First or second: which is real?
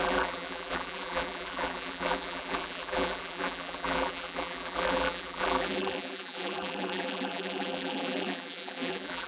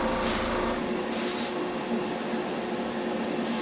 second